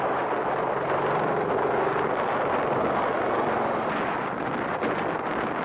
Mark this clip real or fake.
real